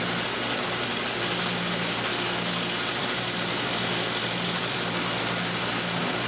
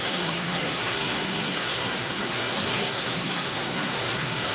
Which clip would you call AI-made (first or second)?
second